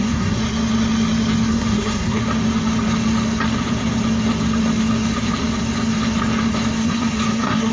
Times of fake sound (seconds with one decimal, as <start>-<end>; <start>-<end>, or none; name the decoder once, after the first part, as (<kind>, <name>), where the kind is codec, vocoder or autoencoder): 0.0-0.4 (codec, SNAC); 1.5-2.2; 6.8-7.7